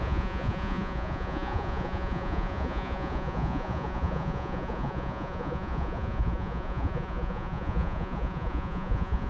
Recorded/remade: remade